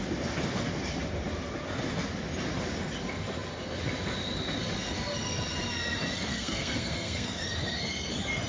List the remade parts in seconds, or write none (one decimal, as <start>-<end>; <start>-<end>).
6.3-7.4